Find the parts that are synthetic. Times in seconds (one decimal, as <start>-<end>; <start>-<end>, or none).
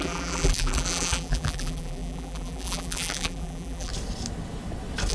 0.0-3.9